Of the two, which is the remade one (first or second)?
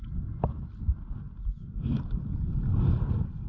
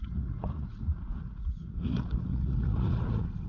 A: second